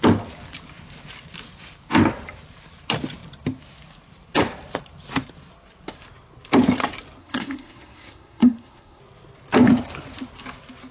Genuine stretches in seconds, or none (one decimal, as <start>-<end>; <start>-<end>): 0.0-7.2; 9.0-10.9